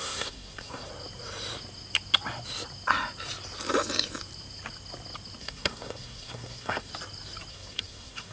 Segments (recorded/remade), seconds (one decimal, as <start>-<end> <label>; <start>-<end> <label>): 0.0-0.9 remade; 0.9-5.4 recorded; 5.4-6.9 remade; 6.9-7.5 recorded; 7.5-8.3 remade